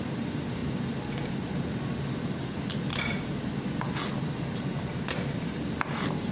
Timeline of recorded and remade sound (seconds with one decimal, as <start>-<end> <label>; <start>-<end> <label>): 0.0-0.6 remade; 0.6-4.2 recorded; 4.2-6.3 remade